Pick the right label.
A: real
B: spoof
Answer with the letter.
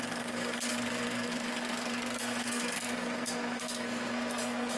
B